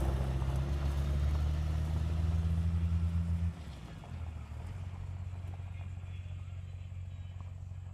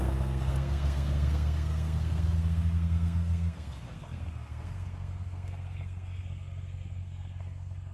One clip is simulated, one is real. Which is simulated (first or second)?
second